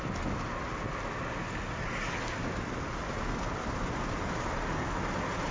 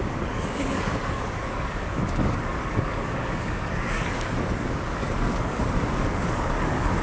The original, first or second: first